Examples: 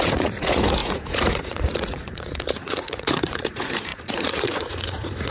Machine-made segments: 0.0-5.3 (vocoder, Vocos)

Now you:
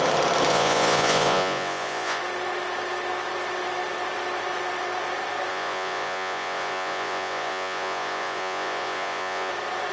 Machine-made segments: 0.5-2.2 (vocoder, Vocos); 5.5-9.5

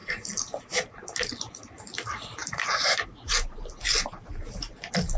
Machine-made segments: 2.4-3.6 (vocoder, BigVGAN v2)

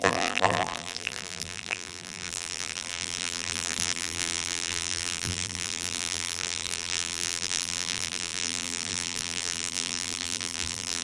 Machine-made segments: 0.0-11.0 (vocoder, BigVGAN v2)

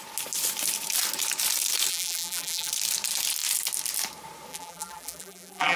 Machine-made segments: 1.9-2.7 (vocoder, BigVGAN v2); 4.5-5.8

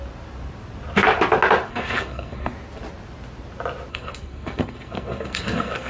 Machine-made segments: 1.7-2.5 (codec, SNAC); 3.9-5.9